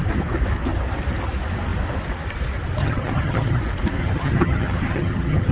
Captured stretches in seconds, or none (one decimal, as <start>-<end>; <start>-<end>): 0.0-2.8; 3.6-4.0